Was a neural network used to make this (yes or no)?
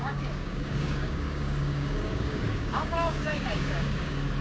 yes